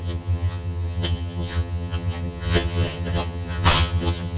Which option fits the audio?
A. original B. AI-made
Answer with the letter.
B